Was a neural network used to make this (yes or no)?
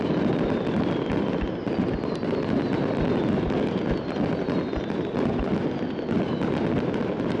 no